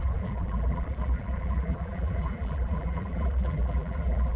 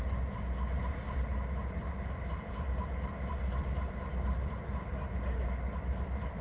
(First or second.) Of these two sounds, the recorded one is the second